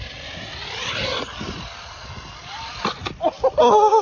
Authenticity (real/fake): real